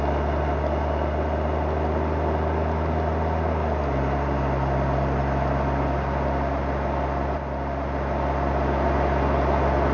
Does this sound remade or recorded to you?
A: recorded